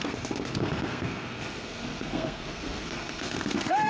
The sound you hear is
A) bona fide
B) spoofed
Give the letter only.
B